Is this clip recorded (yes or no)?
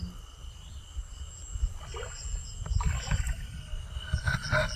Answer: yes